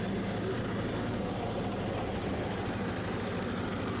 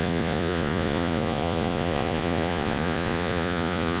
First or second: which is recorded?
first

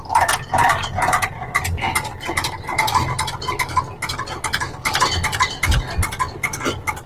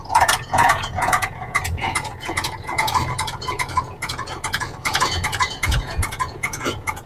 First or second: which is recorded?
first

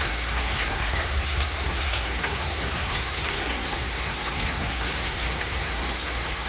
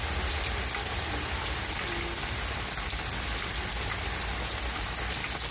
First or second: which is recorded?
second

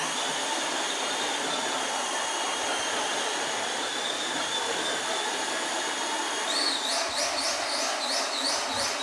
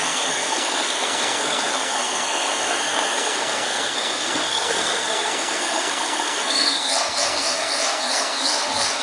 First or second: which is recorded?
first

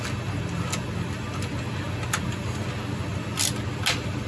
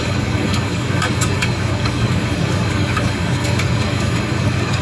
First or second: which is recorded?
first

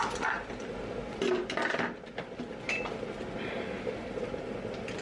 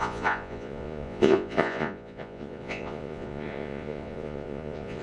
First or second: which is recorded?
first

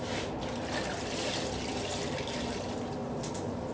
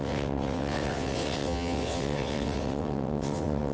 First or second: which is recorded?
first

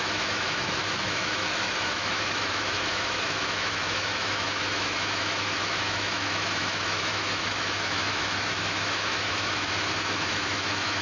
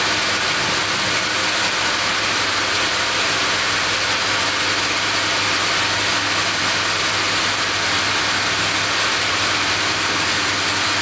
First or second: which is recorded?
second